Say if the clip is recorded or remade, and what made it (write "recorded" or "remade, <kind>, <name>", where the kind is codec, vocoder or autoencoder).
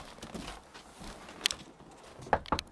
recorded